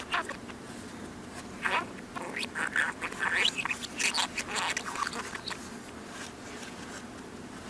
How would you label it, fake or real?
real